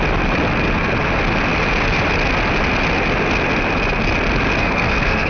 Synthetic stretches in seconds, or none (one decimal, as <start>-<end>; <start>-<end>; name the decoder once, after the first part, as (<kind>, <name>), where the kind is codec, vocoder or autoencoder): 4.6-5.3 (codec, SNAC)